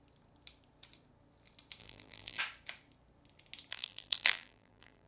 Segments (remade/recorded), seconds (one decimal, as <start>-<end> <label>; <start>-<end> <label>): 0.0-1.8 recorded; 1.8-2.4 remade; 2.4-3.7 recorded; 3.7-5.1 remade